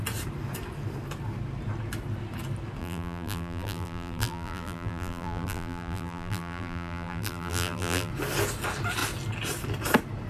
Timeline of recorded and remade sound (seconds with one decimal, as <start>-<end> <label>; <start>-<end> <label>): 0.0-2.8 recorded; 2.8-8.1 remade; 8.1-10.3 recorded